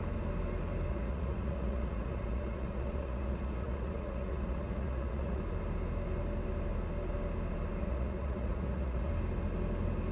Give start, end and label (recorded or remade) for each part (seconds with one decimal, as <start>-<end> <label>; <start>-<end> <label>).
0.0-0.9 recorded; 0.9-5.4 remade; 5.4-7.8 recorded; 7.8-9.1 remade; 9.1-10.1 recorded